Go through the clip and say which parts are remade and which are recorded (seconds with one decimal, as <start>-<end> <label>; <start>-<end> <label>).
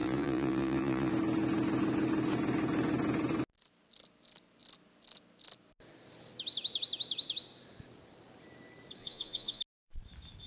0.0-1.1 remade; 1.1-9.0 recorded; 9.0-9.6 remade; 9.6-10.5 recorded